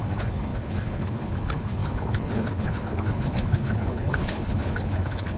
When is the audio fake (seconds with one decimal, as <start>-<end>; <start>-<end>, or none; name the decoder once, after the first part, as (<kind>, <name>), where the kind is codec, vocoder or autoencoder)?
0.0-5.4 (codec, HILCodec)